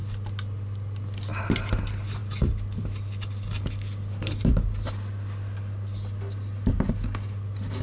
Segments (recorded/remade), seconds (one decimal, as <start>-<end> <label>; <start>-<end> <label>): 0.0-7.8 recorded